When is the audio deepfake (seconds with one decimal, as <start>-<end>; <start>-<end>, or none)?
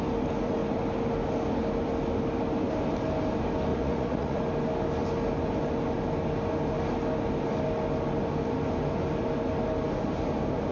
3.7-4.4